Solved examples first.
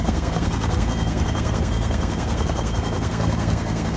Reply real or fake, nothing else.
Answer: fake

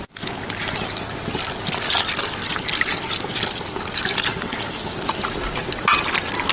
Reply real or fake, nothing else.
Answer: real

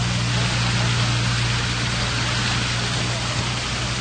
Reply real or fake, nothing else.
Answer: real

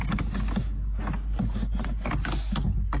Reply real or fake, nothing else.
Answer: real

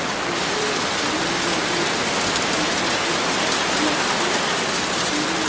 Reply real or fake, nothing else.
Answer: real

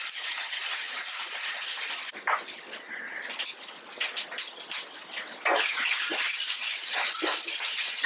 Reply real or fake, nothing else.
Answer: real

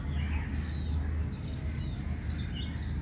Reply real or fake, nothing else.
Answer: real